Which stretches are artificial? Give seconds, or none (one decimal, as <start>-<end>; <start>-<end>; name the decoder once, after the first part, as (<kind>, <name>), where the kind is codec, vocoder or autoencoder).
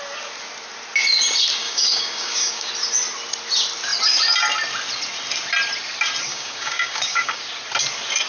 1.6-2.7 (codec, DAC); 6.3-7.4